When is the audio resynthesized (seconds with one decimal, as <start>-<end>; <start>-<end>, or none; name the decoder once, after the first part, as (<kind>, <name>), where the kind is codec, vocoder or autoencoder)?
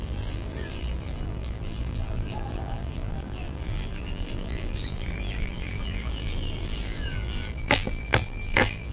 0.0-8.9 (vocoder, BigVGAN v2)